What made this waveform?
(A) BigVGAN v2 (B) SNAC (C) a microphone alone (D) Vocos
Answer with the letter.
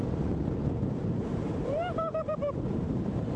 A